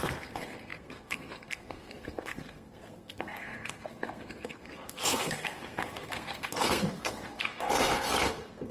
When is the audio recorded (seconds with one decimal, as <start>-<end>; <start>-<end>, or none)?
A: none